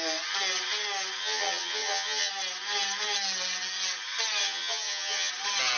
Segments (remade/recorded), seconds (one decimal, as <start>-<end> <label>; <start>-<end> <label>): 0.0-1.2 recorded; 1.2-2.3 remade; 2.3-4.4 recorded; 4.4-5.3 remade; 5.3-5.8 recorded